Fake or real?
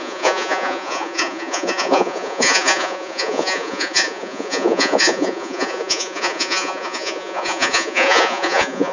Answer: fake